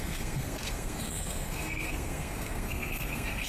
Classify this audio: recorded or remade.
remade